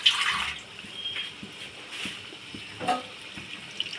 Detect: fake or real real